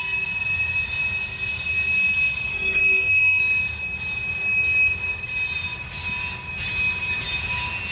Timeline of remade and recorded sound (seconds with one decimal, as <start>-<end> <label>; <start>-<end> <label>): 0.0-2.5 recorded; 2.5-3.4 remade; 3.4-7.9 recorded